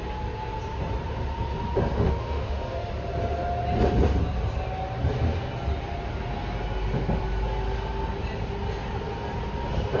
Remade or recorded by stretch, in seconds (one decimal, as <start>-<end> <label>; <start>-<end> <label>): 0.0-1.9 recorded; 1.9-2.9 remade; 2.9-10.0 recorded